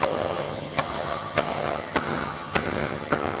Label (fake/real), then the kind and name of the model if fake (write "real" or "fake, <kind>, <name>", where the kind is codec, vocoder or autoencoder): fake, vocoder, HiFi-GAN